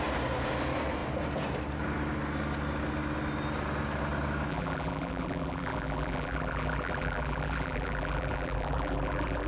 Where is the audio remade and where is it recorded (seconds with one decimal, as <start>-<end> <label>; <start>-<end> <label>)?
0.0-4.5 recorded; 4.5-9.5 remade

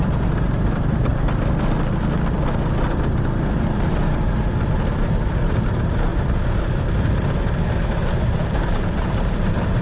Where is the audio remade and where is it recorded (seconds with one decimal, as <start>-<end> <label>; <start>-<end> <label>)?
0.0-1.1 remade; 1.1-4.6 recorded; 4.6-9.8 remade

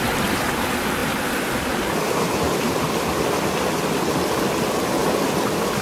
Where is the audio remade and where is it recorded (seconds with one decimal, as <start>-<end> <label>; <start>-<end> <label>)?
0.0-5.0 recorded; 5.0-5.8 remade

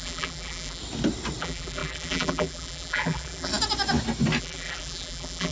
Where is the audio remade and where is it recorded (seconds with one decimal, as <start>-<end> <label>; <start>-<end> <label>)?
0.0-0.8 remade; 0.8-1.4 recorded; 1.4-3.5 remade; 3.5-4.4 recorded; 4.4-5.5 remade

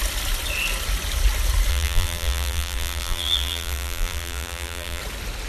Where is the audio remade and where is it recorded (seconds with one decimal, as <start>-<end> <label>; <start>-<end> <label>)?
0.0-1.7 recorded; 1.7-5.0 remade; 5.0-5.5 recorded

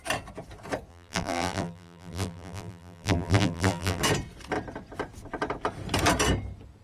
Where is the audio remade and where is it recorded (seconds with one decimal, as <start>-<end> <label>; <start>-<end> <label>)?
0.0-0.9 recorded; 0.9-4.0 remade; 4.0-6.8 recorded

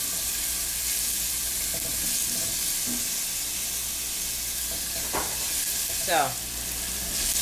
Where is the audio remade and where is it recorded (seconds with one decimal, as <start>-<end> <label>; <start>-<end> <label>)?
0.0-7.4 recorded